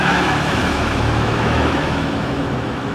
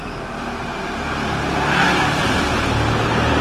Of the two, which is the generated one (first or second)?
first